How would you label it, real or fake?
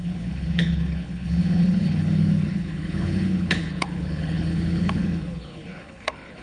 fake